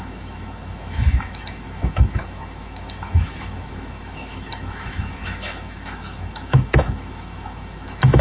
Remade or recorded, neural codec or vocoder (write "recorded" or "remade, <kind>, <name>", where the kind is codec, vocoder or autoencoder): remade, autoencoder, DAC-VAE